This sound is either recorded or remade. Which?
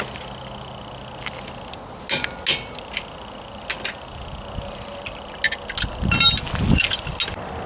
recorded